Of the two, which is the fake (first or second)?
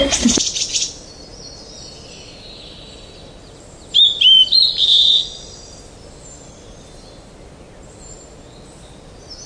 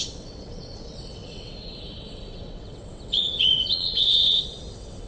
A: second